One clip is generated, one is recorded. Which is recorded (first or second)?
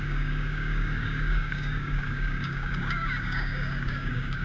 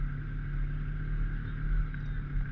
second